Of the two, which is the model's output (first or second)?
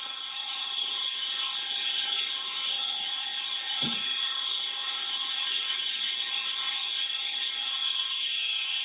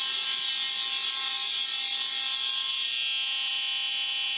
first